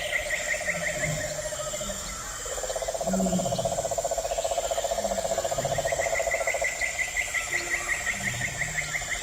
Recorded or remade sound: recorded